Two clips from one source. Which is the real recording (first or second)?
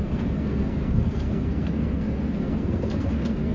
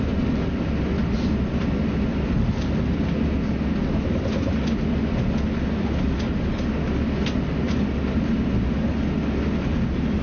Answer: second